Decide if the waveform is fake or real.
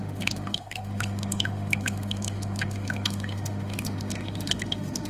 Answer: fake